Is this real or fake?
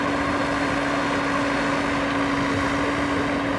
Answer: real